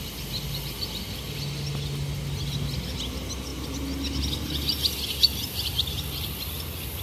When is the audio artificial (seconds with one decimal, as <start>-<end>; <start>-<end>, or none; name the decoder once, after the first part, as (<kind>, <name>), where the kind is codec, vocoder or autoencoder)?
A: none